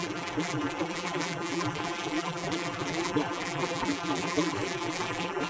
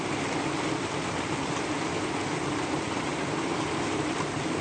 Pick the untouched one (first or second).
second